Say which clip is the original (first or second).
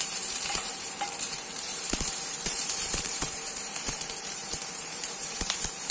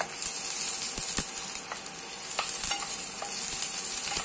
second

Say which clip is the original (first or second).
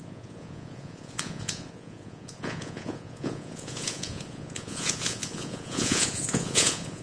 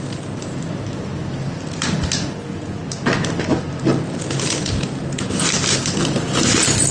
second